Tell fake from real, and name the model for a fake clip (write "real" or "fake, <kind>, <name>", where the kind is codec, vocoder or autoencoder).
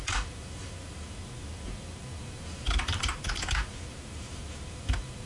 fake, vocoder, BigVGAN v2